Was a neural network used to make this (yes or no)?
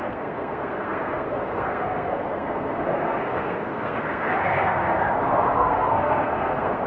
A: yes